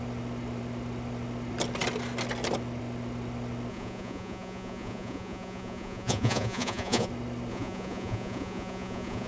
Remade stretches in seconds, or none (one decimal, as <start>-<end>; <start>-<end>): 3.7-7.1; 7.5-9.3